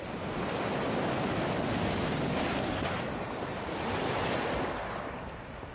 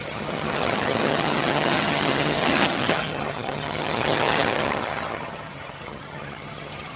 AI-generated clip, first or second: second